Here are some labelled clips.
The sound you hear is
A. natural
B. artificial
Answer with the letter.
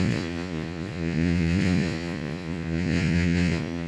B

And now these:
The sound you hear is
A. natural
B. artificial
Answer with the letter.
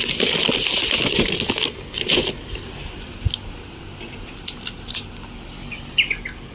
A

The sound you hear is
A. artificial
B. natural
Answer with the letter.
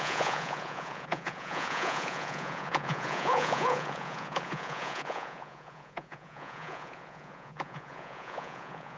A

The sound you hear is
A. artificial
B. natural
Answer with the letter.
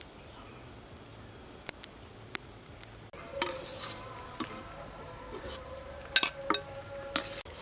B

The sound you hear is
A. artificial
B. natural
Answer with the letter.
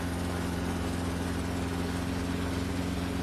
B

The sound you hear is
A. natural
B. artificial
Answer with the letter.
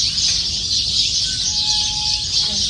A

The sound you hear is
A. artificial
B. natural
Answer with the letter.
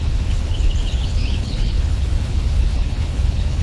A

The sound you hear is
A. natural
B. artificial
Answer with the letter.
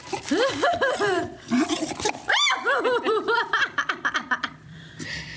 B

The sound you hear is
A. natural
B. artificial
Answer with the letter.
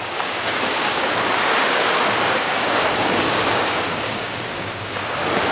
B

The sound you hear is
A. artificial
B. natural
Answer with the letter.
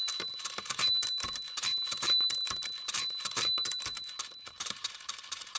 A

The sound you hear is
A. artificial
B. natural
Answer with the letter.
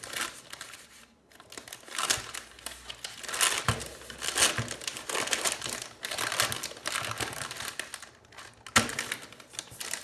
B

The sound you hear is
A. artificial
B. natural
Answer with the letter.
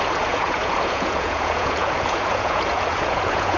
A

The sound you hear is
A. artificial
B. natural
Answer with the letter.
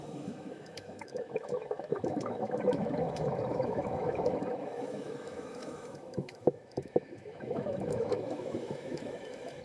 A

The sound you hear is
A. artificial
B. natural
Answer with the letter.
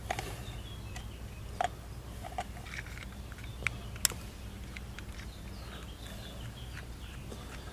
B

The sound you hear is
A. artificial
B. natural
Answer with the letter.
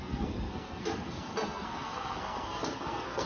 A